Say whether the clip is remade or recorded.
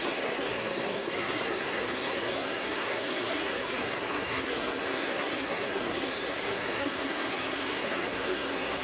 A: remade